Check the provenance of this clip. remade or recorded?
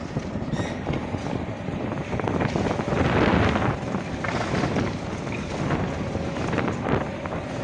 remade